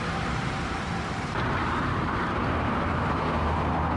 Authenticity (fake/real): fake